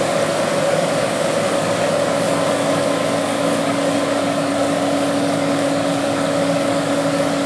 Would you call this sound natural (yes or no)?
no